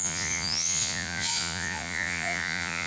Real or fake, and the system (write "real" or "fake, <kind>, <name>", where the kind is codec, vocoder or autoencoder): fake, vocoder, Vocos